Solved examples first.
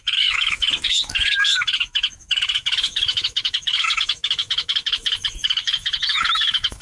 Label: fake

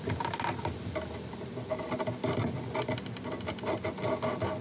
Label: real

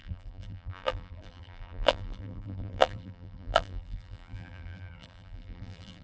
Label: fake